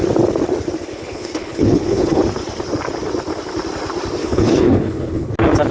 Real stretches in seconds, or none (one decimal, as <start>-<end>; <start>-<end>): 0.0-0.9; 2.2-4.2; 5.3-5.7